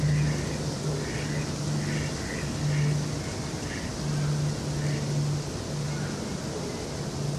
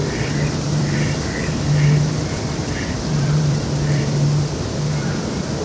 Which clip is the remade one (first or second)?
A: second